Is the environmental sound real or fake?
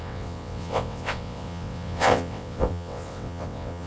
fake